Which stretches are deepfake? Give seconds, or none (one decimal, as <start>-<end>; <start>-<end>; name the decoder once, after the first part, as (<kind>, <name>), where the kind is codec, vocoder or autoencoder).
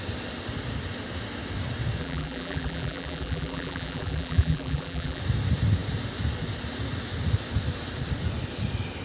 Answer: 2.0-5.2 (vocoder, BigVGAN v2)